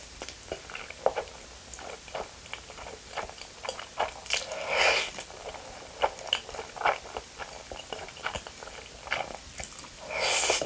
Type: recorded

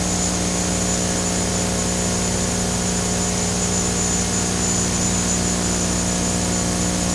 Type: recorded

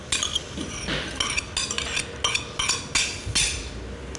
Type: recorded